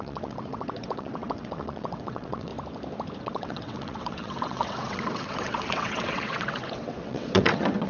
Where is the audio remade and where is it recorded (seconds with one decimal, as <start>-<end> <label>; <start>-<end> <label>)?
0.0-2.5 remade; 2.5-3.2 recorded; 3.2-7.9 remade